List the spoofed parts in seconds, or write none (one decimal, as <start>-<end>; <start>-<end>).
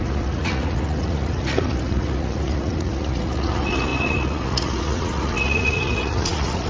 0.0-6.7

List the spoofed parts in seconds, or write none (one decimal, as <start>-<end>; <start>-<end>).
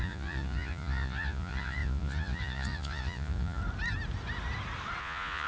0.0-3.6; 5.0-5.5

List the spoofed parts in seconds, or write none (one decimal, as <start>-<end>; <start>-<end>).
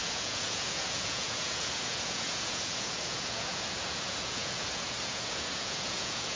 0.0-6.4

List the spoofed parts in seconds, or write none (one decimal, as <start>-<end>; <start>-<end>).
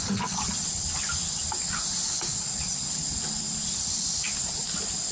0.0-0.8; 2.2-3.0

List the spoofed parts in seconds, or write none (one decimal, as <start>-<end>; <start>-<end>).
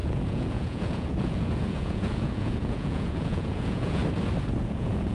0.0-4.0; 4.6-5.1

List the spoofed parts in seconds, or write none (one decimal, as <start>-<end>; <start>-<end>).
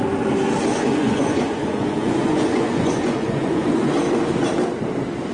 0.7-3.9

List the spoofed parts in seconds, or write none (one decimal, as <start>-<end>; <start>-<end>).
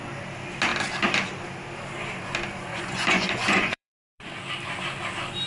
2.7-4.2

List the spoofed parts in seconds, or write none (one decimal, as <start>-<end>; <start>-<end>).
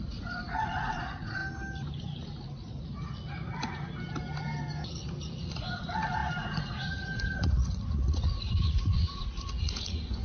0.0-1.4; 5.4-10.2